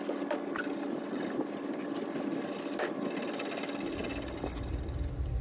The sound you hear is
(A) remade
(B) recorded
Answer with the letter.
B